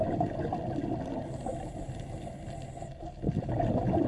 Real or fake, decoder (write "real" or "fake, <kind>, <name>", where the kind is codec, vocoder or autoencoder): real